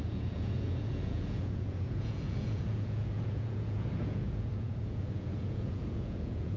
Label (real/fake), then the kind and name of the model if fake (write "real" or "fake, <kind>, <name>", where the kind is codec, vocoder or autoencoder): fake, vocoder, Vocos